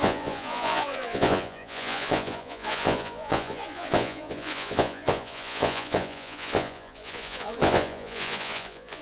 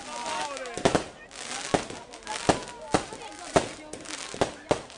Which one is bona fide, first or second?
second